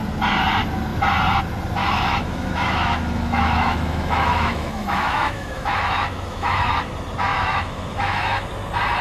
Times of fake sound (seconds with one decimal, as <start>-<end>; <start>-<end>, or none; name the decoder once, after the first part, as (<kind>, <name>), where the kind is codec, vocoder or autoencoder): 1.8-6.7 (autoencoder, DAC-VAE); 7.3-8.5